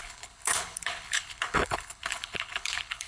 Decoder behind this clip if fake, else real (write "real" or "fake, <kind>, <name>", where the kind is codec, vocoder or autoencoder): fake, codec, HILCodec